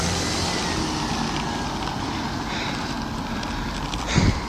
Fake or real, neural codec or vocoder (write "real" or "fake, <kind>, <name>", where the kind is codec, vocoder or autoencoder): real